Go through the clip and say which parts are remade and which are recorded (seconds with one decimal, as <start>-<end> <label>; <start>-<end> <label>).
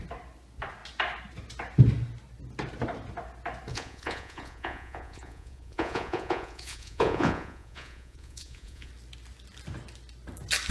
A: 0.0-3.7 recorded; 3.7-8.9 remade; 8.9-10.7 recorded